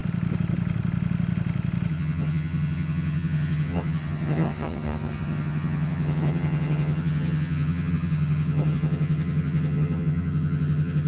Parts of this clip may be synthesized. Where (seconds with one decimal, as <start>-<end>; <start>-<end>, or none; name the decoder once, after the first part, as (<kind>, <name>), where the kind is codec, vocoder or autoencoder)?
1.9-11.1 (vocoder, HiFi-GAN)